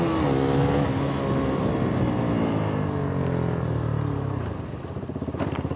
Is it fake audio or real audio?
real